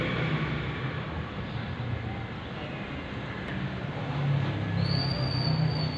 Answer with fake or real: real